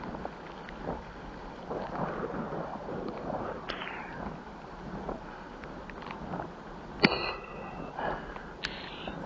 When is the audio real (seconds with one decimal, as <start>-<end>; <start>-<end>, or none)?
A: 0.0-1.4; 2.1-2.7; 5.4-9.3